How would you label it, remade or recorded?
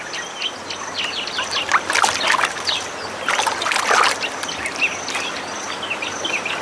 recorded